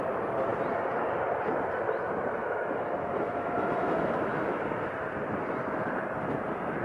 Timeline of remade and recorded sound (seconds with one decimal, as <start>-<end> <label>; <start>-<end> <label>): 0.0-2.4 recorded; 2.4-4.6 remade; 4.6-6.8 recorded